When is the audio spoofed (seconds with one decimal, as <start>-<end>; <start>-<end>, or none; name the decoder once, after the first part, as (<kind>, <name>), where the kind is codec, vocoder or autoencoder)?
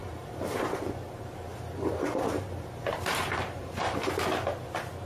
0.0-0.8 (vocoder, BigVGAN v2); 1.5-4.1